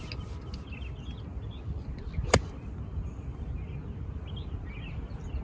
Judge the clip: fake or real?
real